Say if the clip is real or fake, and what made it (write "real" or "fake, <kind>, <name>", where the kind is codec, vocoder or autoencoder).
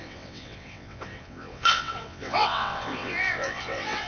fake, vocoder, WaveNeXt